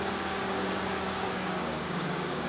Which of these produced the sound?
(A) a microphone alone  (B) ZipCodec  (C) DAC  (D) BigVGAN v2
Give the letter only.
C